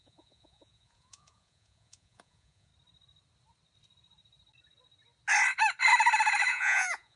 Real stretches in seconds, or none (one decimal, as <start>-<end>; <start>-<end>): 2.7-6.5